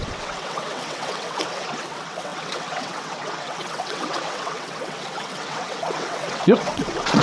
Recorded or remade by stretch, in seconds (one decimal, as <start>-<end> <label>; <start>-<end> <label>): 0.0-7.2 remade